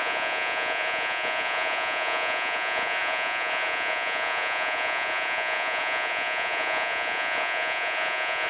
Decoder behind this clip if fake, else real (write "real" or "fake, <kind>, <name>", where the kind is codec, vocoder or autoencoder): fake, vocoder, Vocos